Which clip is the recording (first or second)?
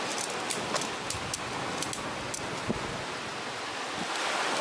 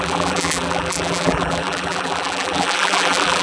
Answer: first